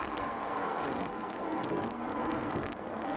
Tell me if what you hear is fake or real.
fake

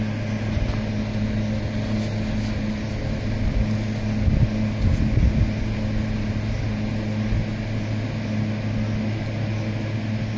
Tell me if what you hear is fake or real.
real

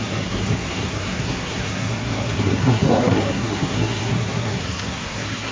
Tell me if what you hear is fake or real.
fake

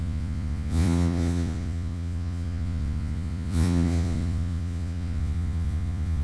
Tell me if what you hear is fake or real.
fake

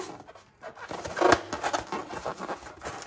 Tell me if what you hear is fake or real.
real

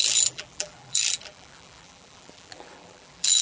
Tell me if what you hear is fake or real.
fake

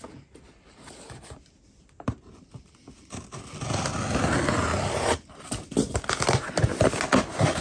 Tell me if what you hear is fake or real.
real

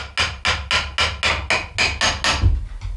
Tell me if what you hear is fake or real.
real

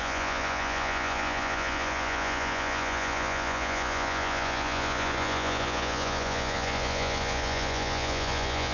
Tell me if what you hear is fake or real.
fake